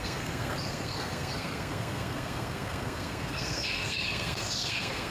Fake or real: fake